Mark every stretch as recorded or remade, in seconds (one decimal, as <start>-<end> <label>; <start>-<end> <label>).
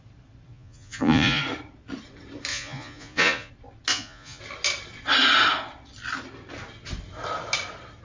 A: 0.0-0.5 recorded; 0.5-1.4 remade; 1.4-2.5 recorded; 2.5-3.5 remade; 3.5-3.9 recorded; 3.9-4.4 remade; 4.4-8.0 recorded